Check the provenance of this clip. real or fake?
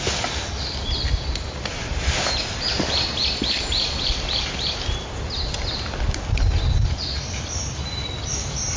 real